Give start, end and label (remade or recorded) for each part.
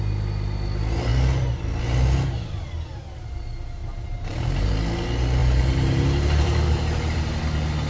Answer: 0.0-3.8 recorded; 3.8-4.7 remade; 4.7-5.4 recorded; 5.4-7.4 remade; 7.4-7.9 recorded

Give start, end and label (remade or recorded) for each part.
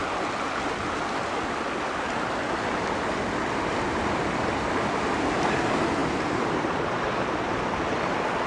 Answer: 0.0-6.0 recorded; 6.0-8.0 remade; 8.0-8.5 recorded